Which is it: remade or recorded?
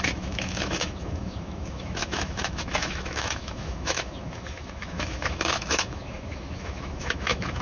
remade